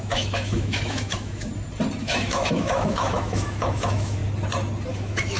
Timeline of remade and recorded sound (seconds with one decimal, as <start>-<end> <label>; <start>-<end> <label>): 0.0-1.5 remade; 1.5-2.0 recorded; 2.0-4.2 remade; 4.2-4.9 recorded; 4.9-5.4 remade